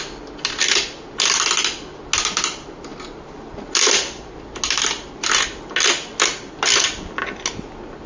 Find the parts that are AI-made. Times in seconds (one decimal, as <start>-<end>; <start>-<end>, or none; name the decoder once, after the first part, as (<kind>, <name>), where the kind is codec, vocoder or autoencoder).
none

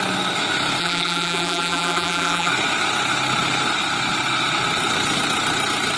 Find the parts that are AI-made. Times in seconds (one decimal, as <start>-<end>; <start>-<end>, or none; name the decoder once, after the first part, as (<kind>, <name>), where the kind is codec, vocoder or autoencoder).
0.8-2.5 (vocoder, BigVGAN v2)